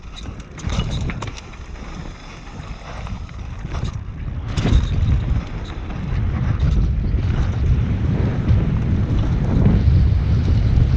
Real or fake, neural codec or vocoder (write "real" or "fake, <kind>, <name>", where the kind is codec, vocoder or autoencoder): real